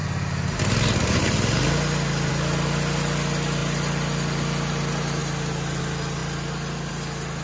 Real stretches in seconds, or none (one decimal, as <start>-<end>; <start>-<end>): 0.0-7.4